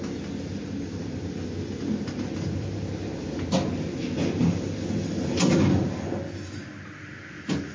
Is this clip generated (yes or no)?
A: no